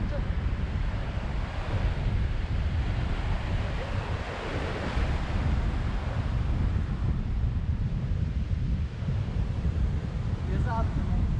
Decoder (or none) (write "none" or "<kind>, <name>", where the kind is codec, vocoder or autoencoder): vocoder, BigVGAN v2